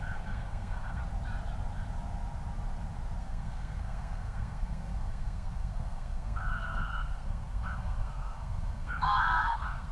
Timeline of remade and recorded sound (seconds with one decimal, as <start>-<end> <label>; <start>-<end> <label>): 0.0-1.0 remade; 1.0-3.2 recorded; 3.2-9.9 remade